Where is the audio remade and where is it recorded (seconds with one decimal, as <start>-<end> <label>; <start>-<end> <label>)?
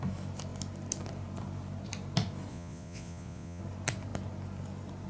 0.0-2.5 recorded; 2.5-3.6 remade; 3.6-5.1 recorded